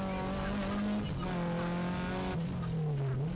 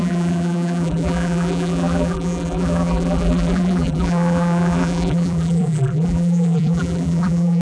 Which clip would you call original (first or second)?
first